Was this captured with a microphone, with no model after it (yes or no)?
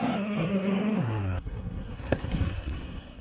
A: no